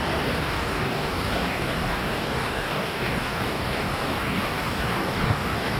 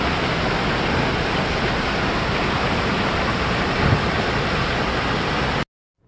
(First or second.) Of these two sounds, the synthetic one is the first